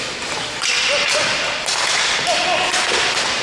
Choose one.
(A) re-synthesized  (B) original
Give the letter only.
B